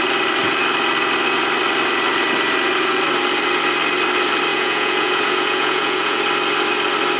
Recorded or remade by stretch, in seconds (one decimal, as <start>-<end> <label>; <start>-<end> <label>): 0.0-4.5 recorded; 4.5-6.2 remade; 6.2-7.2 recorded